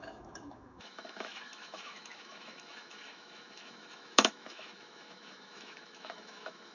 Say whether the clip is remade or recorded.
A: remade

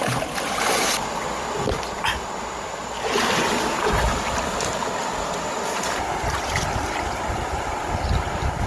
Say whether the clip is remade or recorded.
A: recorded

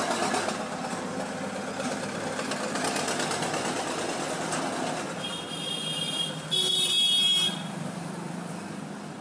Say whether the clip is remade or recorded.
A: recorded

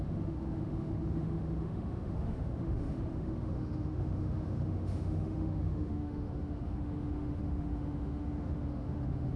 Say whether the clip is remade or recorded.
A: remade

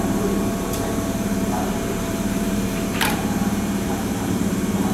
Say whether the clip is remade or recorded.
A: remade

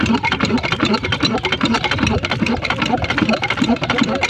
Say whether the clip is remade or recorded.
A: recorded